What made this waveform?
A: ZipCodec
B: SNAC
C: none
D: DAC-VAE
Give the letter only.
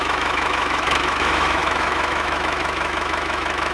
D